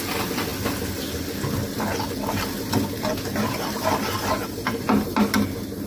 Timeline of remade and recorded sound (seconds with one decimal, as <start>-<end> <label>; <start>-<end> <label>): 0.0-3.1 recorded; 3.1-5.9 remade

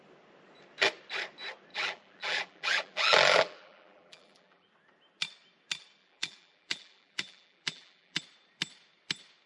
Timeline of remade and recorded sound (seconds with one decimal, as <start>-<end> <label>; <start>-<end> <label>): 0.0-1.7 recorded; 1.7-4.7 remade; 4.7-6.0 recorded; 6.0-8.2 remade; 8.2-9.5 recorded

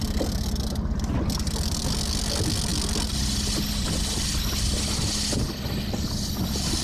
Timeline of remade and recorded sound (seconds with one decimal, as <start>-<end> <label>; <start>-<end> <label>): 0.0-6.8 recorded

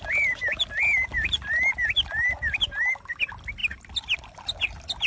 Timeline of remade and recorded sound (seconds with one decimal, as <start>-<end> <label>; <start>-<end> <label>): 0.0-3.6 recorded; 3.6-4.4 remade; 4.4-5.1 recorded

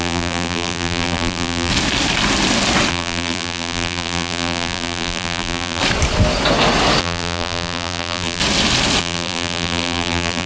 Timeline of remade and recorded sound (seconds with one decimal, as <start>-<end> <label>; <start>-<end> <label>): 0.0-1.7 remade; 1.7-2.9 recorded; 2.9-5.8 remade; 5.8-7.0 recorded; 7.0-8.4 remade; 8.4-9.0 recorded; 9.0-10.5 remade

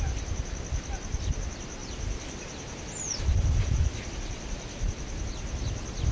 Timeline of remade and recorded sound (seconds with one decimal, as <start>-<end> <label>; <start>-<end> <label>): 0.0-1.8 recorded; 1.8-4.1 remade; 4.1-6.1 recorded